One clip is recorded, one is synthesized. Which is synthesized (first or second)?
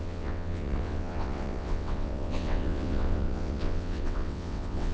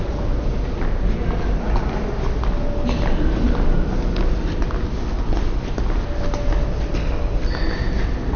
first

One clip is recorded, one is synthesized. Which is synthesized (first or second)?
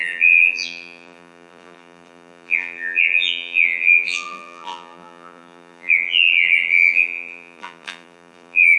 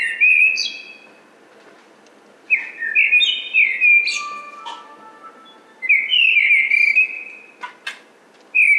first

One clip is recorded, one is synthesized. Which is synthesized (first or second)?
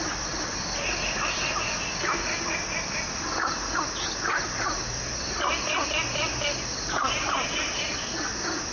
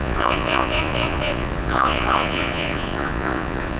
second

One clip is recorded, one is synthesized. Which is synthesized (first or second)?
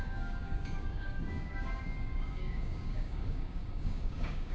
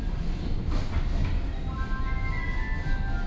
first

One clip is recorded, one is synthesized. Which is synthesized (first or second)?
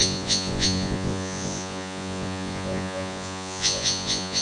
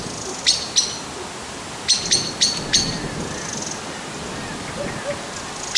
first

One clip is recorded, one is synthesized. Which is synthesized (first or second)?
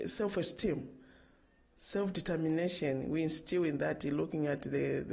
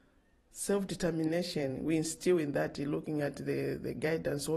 second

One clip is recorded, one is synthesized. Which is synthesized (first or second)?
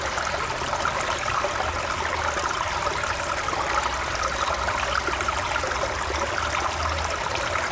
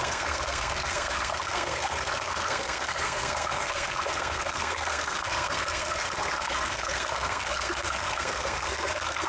second